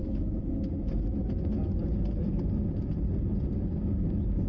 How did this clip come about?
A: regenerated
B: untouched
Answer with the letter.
B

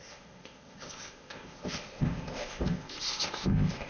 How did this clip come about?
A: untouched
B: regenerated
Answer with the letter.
B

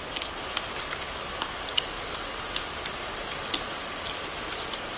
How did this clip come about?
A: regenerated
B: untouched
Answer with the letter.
B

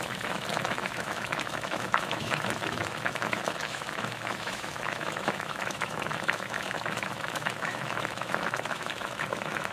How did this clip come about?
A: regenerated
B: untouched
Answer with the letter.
A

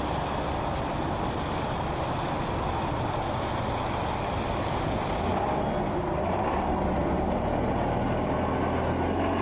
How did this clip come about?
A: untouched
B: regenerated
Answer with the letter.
A